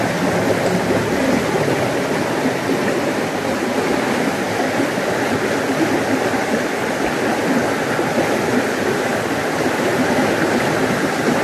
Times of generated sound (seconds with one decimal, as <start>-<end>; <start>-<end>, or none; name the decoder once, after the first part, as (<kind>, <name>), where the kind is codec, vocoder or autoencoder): none